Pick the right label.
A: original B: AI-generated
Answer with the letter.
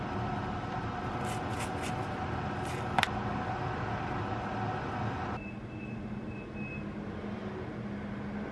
A